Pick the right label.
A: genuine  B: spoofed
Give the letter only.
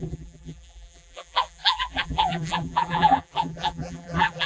B